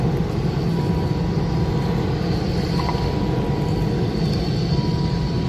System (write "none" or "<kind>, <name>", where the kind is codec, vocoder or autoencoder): none